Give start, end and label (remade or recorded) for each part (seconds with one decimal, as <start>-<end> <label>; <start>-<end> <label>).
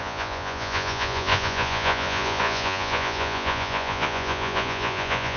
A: 0.0-5.4 remade